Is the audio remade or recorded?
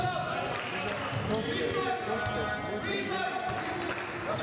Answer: recorded